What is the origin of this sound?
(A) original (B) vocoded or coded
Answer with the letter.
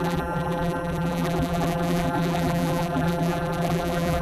B